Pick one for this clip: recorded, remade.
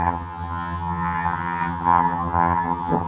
remade